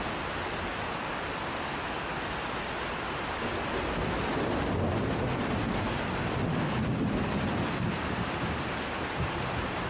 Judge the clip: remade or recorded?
recorded